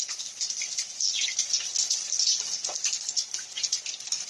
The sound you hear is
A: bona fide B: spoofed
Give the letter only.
A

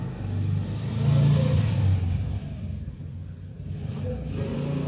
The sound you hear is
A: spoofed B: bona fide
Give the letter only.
B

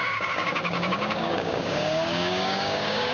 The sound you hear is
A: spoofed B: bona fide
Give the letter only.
A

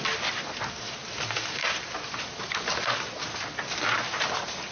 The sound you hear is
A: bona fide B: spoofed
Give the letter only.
A